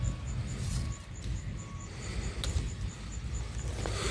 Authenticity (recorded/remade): recorded